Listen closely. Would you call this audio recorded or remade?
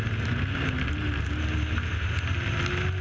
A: recorded